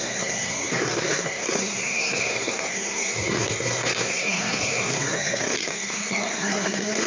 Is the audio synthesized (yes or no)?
yes